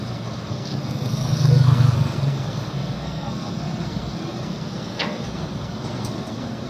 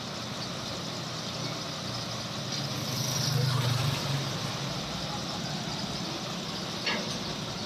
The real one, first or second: second